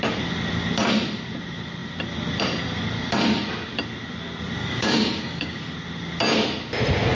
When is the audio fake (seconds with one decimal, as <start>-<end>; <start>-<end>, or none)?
4.6-5.6